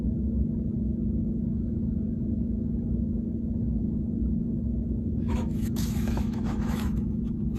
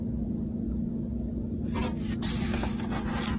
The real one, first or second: second